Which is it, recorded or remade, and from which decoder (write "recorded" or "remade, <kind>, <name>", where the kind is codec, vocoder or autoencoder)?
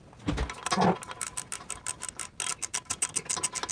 recorded